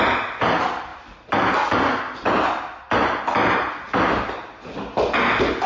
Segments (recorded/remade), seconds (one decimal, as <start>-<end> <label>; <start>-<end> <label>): 0.0-5.7 recorded